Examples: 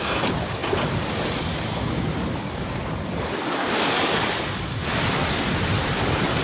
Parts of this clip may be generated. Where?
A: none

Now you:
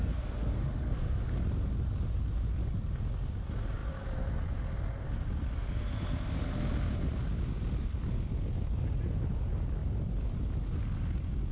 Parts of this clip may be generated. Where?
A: 0.0-1.2 (codec, SNAC)

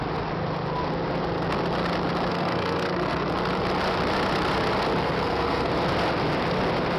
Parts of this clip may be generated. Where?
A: 2.3-3.3 (codec, SNAC); 5.0-5.7

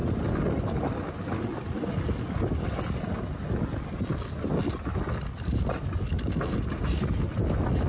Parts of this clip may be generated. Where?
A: none

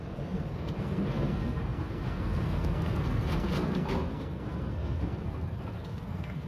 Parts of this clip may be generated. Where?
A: 0.0-6.5 (codec, SNAC)

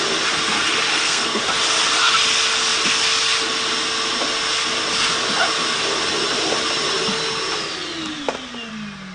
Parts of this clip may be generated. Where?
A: 0.9-1.4 (codec, SNAC)

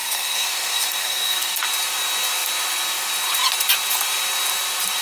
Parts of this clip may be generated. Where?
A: 0.0-1.6 (codec, SNAC)